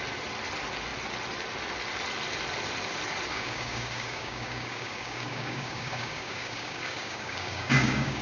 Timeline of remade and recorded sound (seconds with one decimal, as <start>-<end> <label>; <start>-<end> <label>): 0.0-3.3 recorded; 3.3-8.2 remade